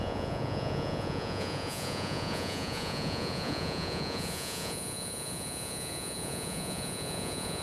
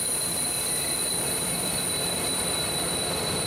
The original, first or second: second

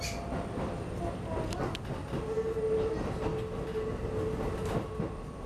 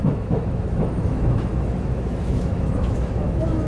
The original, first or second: first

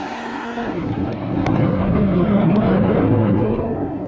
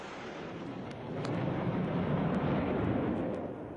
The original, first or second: second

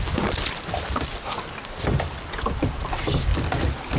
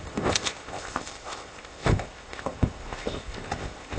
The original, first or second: first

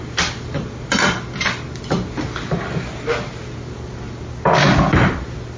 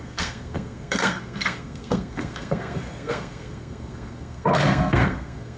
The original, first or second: first